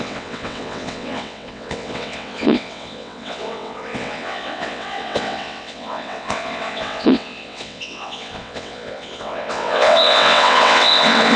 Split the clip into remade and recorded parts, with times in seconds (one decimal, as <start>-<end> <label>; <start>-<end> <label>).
0.0-11.4 remade